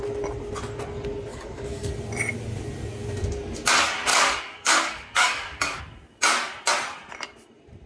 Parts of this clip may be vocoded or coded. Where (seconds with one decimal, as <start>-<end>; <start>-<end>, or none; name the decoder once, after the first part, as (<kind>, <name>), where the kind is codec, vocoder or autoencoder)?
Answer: 1.3-1.9 (codec, DAC); 4.1-5.8